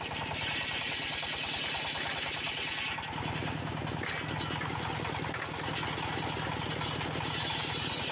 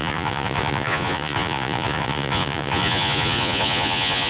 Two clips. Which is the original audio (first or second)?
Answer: first